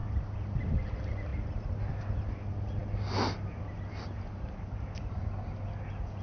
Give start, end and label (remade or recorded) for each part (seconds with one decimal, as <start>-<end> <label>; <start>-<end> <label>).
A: 0.0-6.2 recorded